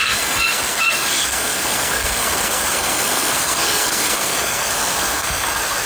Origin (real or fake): fake